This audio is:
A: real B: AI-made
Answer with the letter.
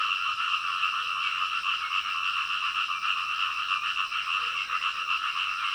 A